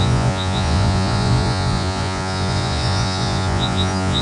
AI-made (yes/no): yes